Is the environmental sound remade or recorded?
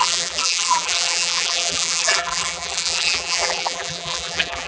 remade